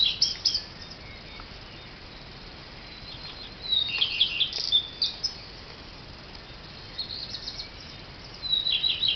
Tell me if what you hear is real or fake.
real